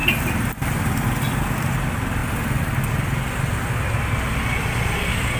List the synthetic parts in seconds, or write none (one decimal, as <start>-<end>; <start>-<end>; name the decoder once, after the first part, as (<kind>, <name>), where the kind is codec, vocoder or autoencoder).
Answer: none